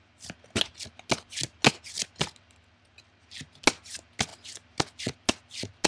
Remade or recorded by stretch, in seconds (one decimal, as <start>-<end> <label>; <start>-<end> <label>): 0.0-5.9 recorded